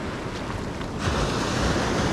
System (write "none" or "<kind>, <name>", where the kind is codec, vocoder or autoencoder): none